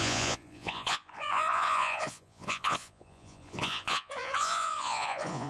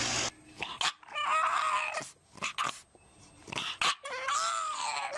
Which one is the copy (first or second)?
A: first